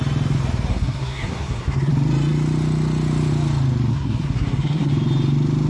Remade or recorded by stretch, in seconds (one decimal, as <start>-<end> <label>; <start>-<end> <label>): 0.0-0.7 recorded; 0.7-1.9 remade; 1.9-3.9 recorded; 3.9-4.9 remade; 4.9-5.7 recorded